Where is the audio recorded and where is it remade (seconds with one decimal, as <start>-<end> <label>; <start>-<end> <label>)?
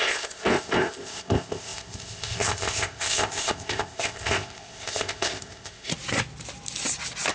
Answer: 0.0-5.9 remade; 5.9-7.3 recorded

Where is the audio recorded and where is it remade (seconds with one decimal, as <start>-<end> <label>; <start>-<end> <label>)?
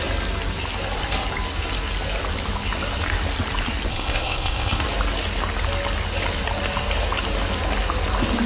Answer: 0.0-3.9 recorded; 3.9-4.8 remade; 4.8-8.5 recorded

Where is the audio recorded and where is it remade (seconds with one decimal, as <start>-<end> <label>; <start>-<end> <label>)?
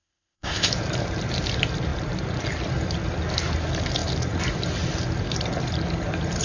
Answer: 0.0-0.7 remade; 0.7-6.4 recorded